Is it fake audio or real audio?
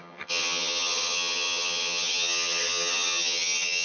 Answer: fake